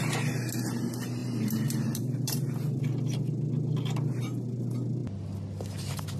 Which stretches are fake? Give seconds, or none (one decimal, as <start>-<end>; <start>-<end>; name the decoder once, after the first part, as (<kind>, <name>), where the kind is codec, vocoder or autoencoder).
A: 1.2-2.8 (vocoder, BigVGAN v2)

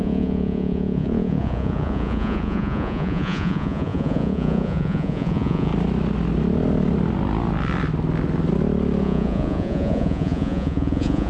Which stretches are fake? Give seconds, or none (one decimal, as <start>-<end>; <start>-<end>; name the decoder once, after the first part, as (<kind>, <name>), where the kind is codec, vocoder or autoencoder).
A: 0.0-5.7 (vocoder, Vocos); 9.0-11.3